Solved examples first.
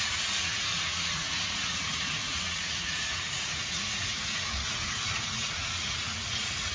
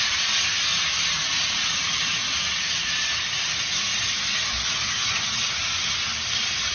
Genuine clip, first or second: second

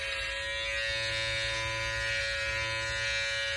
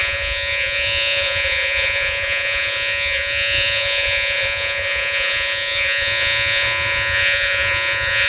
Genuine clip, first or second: first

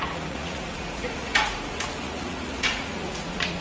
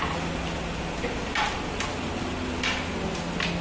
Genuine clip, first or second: second